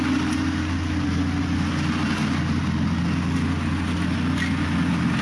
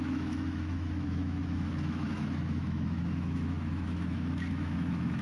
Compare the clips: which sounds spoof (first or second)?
second